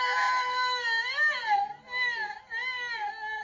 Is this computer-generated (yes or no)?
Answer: no